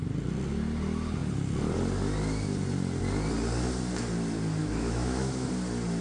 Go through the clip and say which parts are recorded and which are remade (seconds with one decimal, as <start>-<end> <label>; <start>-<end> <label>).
0.0-4.6 recorded; 4.6-5.5 remade; 5.5-6.0 recorded